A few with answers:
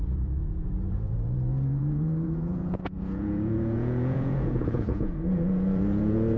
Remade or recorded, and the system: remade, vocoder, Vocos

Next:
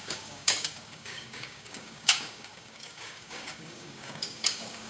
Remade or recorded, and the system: remade, codec, DAC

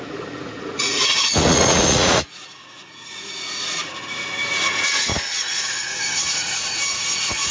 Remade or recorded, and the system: remade, vocoder, Vocos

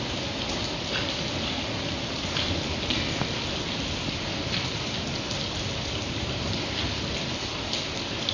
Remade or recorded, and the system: recorded